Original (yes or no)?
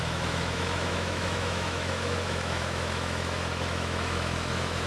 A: no